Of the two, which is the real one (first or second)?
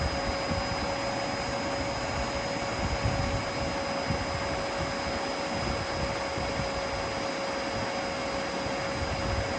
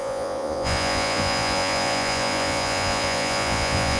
first